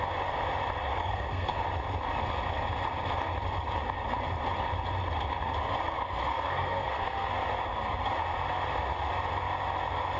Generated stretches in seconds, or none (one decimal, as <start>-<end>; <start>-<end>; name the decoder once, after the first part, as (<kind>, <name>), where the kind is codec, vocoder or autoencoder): 1.0-1.6 (codec, SNAC); 6.3-7.3